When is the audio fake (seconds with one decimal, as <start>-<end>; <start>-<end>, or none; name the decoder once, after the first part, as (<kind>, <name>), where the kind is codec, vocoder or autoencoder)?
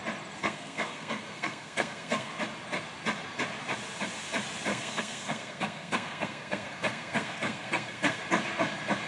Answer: 0.4-2.3 (codec, SNAC); 4.7-8.2